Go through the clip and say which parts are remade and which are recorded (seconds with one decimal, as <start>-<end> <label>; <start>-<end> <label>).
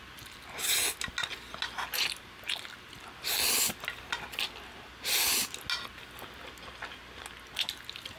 0.0-8.2 recorded